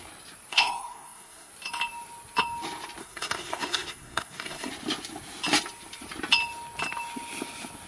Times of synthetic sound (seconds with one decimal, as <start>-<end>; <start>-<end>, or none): 0.5-1.5; 3.0-4.7